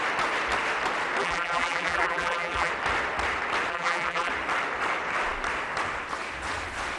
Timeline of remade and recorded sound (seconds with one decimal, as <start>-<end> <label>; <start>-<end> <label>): 0.0-1.2 recorded; 1.2-2.7 remade; 2.7-3.7 recorded; 3.7-4.3 remade; 4.3-7.0 recorded